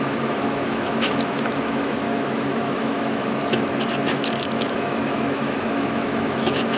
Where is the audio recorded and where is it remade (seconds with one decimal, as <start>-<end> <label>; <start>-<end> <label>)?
0.0-3.4 remade; 3.4-4.1 recorded; 4.1-6.8 remade